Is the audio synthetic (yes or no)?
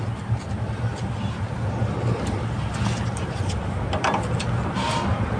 no